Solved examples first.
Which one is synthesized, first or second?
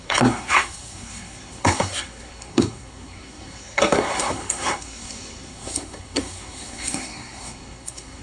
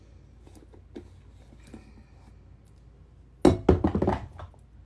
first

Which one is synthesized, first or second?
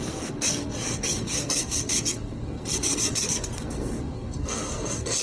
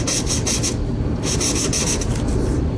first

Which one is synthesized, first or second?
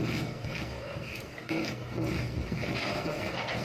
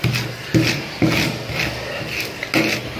first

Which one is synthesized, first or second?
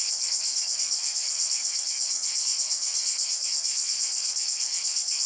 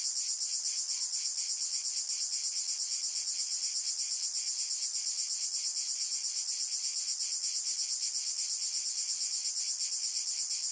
first